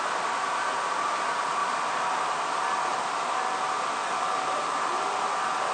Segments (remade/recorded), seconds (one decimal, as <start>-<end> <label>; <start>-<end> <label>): 0.0-1.6 recorded; 1.6-2.2 remade; 2.2-5.7 recorded